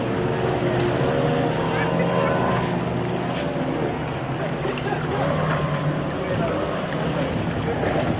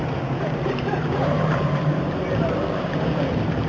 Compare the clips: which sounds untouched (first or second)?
first